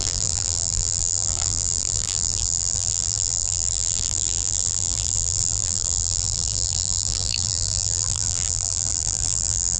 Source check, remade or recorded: remade